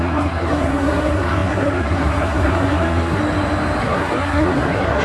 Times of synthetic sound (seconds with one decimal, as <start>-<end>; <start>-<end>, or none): 0.0-3.2; 3.8-5.0